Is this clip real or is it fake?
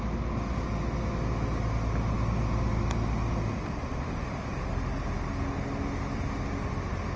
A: real